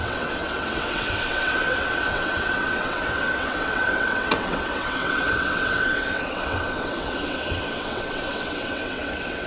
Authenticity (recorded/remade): remade